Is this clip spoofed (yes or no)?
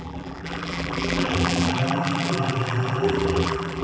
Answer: yes